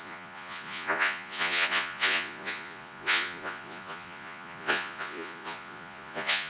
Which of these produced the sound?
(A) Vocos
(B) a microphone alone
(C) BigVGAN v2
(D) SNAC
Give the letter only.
A